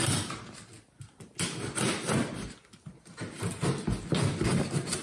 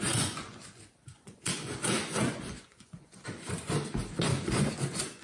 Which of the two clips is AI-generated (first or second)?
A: second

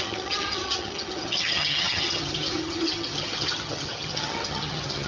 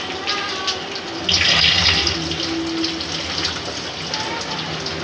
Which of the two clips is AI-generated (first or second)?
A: first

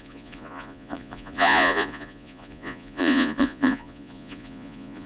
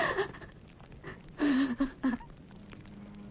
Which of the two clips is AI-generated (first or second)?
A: first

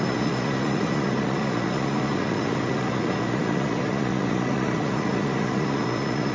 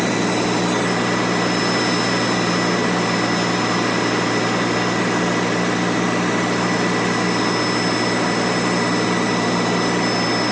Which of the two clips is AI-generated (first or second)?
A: first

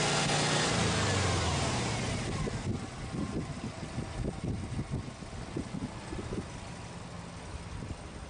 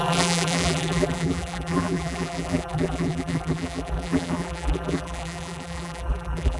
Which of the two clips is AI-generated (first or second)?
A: second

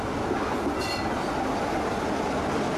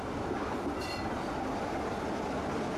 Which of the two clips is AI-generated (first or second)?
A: second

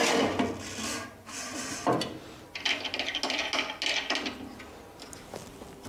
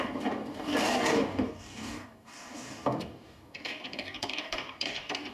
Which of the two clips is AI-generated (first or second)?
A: second